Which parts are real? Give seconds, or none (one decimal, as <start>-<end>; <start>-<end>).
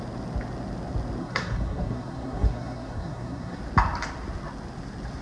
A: 0.0-1.2; 3.6-5.2